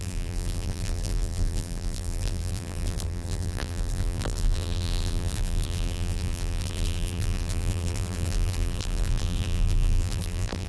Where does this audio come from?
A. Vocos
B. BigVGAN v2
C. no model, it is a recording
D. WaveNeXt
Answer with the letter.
B